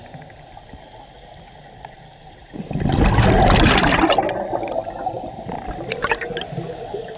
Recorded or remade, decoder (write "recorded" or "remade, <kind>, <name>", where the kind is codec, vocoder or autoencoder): recorded